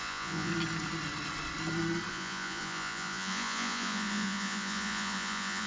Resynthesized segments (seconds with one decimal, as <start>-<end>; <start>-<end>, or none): 0.0-0.5; 2.1-5.7